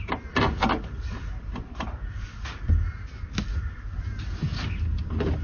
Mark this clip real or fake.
real